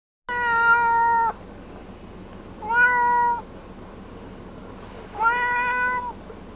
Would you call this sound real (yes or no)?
yes